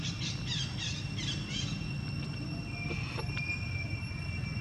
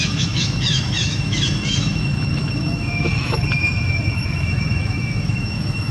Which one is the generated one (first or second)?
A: second